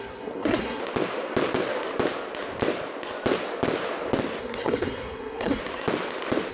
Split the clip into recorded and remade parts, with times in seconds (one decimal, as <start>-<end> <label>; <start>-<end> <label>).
0.0-0.8 remade; 0.8-4.4 recorded; 4.4-5.6 remade; 5.6-6.5 recorded